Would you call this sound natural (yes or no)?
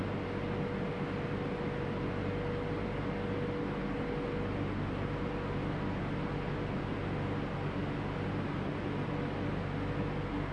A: yes